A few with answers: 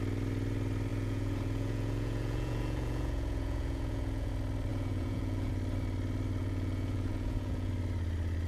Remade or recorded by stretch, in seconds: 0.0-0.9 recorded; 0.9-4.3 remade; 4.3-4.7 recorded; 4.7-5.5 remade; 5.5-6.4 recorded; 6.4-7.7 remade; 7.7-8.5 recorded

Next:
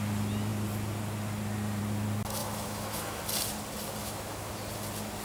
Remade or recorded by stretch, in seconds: 0.0-2.4 recorded; 2.4-3.2 remade; 3.2-4.0 recorded; 4.0-4.5 remade; 4.5-5.2 recorded

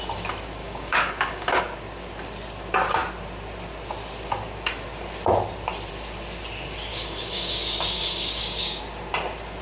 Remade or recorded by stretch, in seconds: 0.0-0.6 recorded; 0.6-1.6 remade; 1.6-6.9 recorded; 6.9-8.8 remade; 8.8-9.6 recorded

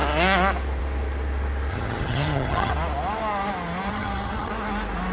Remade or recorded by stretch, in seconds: 0.0-1.7 recorded; 1.7-2.7 remade; 2.7-3.9 recorded; 3.9-4.5 remade; 4.5-5.1 recorded

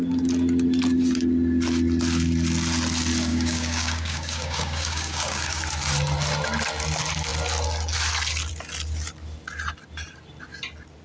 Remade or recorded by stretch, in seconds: 0.0-3.3 recorded; 3.3-5.6 remade; 5.6-11.0 recorded

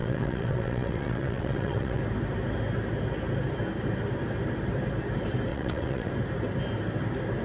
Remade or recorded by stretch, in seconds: 0.0-2.0 remade; 2.0-5.5 recorded; 5.5-6.1 remade; 6.1-7.4 recorded

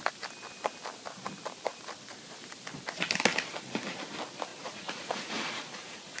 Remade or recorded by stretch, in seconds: 0.0-4.5 recorded; 4.5-6.2 remade